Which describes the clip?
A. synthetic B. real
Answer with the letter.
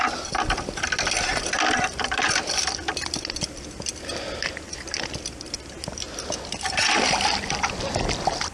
B